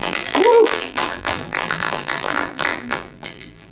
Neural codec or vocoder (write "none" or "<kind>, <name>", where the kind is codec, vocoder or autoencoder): vocoder, BigVGAN v2